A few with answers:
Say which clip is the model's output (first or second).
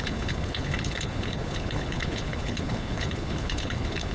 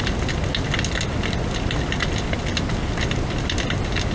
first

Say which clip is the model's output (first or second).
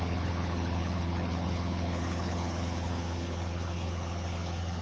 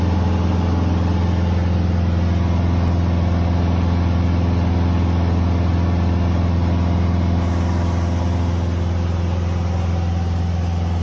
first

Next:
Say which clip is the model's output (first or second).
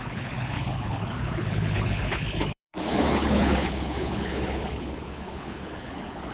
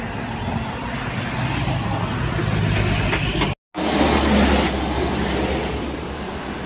first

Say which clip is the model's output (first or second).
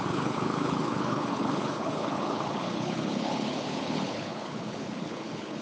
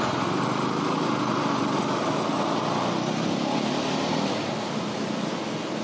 first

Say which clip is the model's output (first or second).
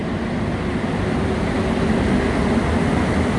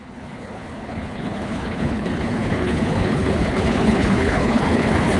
second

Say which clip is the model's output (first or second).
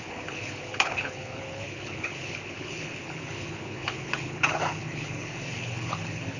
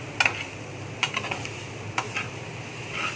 first